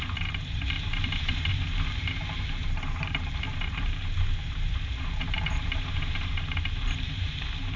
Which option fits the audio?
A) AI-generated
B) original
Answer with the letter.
A